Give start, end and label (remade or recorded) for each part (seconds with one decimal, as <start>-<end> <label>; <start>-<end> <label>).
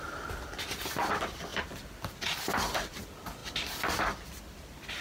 0.0-5.0 recorded